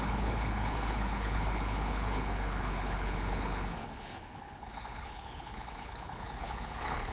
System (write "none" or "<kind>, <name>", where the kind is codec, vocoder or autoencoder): codec, HILCodec